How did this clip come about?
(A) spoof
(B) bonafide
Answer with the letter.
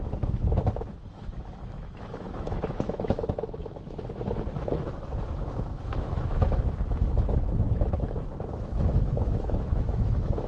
A